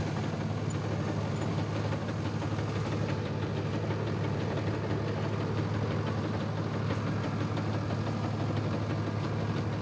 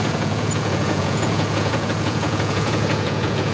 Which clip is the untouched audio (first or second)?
first